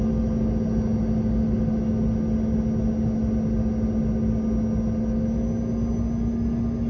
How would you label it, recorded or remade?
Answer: recorded